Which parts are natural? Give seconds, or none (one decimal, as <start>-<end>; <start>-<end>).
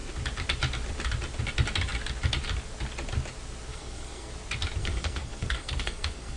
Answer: 0.0-3.7; 4.3-4.8